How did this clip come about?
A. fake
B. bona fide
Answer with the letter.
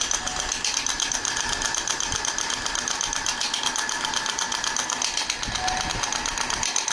B